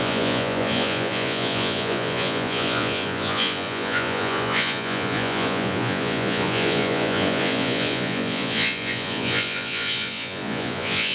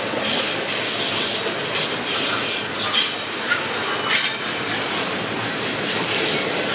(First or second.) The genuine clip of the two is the second